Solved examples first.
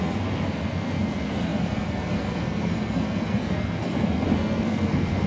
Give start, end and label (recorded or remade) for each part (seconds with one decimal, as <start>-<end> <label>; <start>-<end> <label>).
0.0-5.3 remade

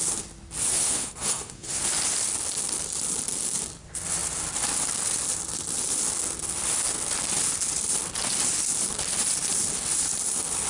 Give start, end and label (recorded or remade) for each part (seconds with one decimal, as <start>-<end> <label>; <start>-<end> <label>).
0.0-0.7 recorded; 0.7-1.8 remade; 1.8-10.7 recorded

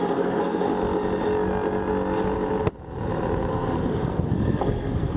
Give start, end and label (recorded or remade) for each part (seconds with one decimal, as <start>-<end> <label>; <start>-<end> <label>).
0.0-0.7 remade; 0.7-3.5 recorded; 3.5-5.2 remade

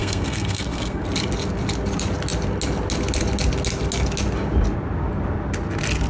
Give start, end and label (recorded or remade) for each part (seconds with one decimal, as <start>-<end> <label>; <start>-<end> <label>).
0.0-1.0 remade; 1.0-6.1 recorded